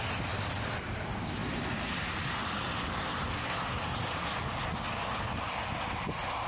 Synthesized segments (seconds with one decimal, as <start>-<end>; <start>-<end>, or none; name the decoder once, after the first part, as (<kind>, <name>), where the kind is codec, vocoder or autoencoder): none